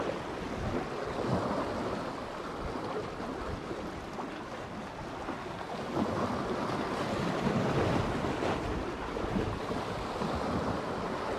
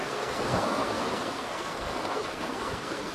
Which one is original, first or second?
first